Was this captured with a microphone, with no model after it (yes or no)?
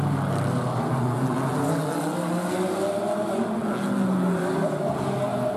yes